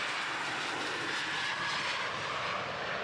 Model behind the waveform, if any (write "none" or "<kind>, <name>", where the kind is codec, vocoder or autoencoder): none